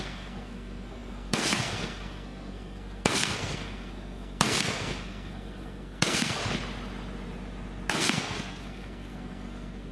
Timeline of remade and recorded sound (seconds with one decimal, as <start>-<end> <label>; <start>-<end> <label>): 0.0-6.4 remade; 6.4-7.9 recorded; 7.9-9.9 remade